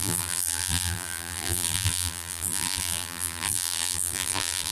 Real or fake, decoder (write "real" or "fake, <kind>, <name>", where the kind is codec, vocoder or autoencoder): fake, vocoder, BigVGAN v2